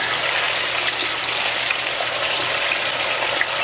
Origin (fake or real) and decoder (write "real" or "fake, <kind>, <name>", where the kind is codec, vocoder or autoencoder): real